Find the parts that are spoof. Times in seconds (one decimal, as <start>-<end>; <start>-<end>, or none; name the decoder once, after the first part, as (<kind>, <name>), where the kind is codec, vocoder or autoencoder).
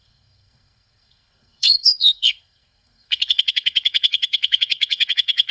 0.0-5.5 (codec, SNAC)